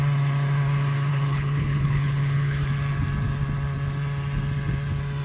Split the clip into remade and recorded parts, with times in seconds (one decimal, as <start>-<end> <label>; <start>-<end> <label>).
0.0-1.1 recorded; 1.1-2.7 remade; 2.7-5.2 recorded